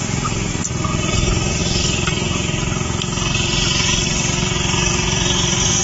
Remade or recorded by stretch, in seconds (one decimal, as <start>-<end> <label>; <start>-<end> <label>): 0.0-5.8 remade